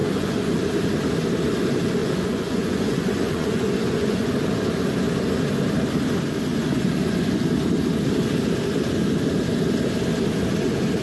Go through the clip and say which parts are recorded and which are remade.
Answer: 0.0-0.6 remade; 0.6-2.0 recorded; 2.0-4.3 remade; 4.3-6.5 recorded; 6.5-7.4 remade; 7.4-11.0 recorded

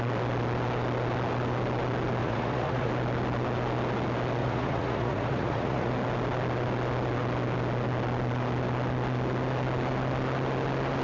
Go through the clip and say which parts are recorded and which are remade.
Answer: 0.0-2.2 recorded; 2.2-2.9 remade; 2.9-4.4 recorded; 4.4-5.9 remade; 5.9-11.0 recorded

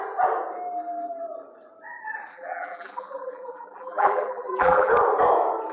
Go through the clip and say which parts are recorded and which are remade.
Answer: 0.0-2.3 recorded; 2.3-4.9 remade; 4.9-5.7 recorded